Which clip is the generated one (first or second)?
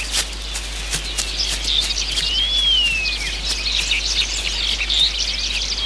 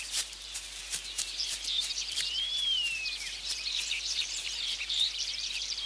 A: second